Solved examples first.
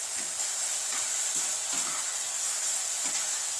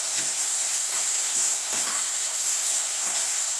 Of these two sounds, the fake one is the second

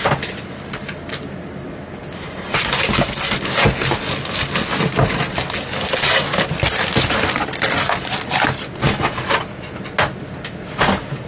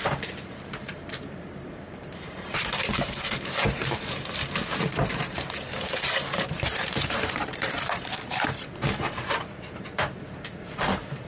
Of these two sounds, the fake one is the second